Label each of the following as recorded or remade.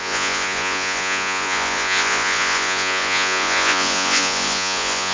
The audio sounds remade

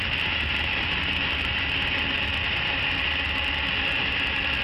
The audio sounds recorded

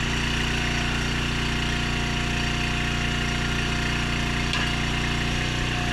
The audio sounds recorded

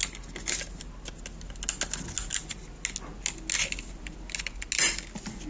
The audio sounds recorded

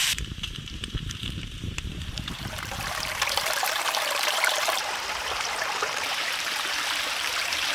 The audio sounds remade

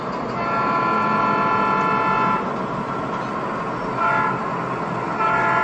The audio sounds recorded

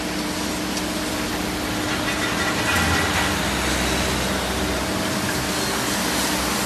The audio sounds recorded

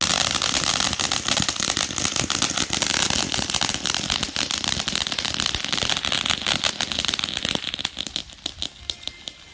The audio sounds recorded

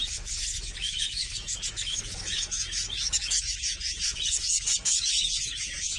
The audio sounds remade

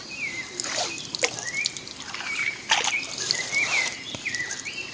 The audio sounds remade